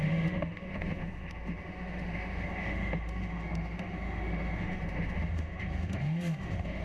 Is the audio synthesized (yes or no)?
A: yes